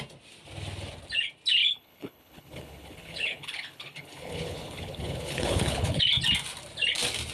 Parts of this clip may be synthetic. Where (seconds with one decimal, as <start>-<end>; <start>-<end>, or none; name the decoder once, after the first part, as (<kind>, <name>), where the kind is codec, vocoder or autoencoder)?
1.6-6.0 (codec, HILCodec)